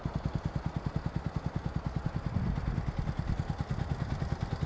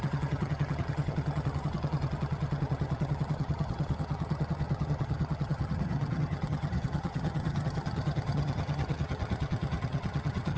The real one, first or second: first